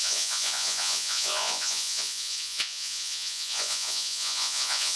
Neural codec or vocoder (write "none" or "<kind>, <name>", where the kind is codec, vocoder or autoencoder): vocoder, Vocos